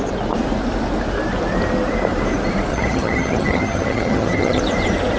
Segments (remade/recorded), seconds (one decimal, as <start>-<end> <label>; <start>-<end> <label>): 0.0-2.7 recorded; 2.7-4.6 remade; 4.6-5.2 recorded